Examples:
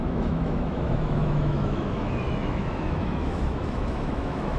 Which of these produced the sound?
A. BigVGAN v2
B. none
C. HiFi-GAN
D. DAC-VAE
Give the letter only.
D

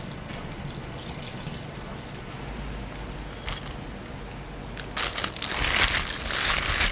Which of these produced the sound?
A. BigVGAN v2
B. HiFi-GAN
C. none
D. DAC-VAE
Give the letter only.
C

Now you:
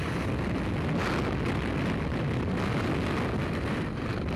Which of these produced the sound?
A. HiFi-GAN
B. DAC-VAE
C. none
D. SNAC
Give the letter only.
C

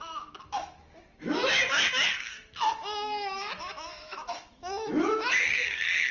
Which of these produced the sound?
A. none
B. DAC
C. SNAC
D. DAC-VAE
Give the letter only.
D